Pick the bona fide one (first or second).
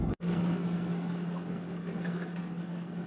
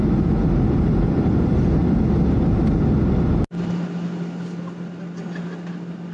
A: second